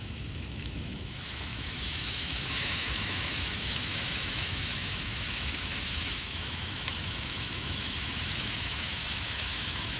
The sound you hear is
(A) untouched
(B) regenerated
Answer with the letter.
B